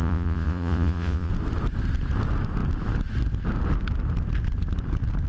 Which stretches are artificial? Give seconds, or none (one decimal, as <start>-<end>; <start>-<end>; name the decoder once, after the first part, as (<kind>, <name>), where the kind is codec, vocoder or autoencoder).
0.0-1.3 (vocoder, Vocos)

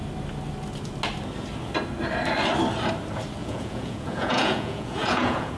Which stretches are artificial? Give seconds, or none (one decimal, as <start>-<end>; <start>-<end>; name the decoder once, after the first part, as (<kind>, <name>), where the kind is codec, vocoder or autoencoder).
3.4-5.6 (vocoder, Vocos)

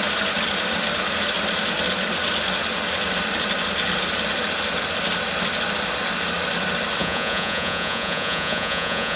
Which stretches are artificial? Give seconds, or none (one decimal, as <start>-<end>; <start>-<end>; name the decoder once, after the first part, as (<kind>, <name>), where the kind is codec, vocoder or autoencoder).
7.0-9.2 (vocoder, Vocos)

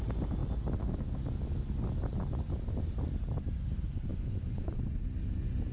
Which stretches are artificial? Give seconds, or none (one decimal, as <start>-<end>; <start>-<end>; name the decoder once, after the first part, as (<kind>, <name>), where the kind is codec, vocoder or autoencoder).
4.1-5.0 (vocoder, Vocos)

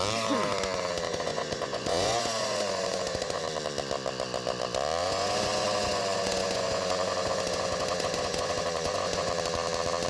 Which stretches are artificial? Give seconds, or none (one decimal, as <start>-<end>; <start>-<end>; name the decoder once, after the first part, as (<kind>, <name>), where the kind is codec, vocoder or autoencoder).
1.1-3.4 (vocoder, Vocos); 5.0-9.3